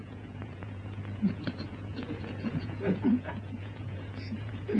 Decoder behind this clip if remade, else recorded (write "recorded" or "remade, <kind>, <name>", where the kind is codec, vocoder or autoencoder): remade, vocoder, Vocos